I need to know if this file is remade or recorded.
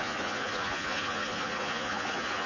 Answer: remade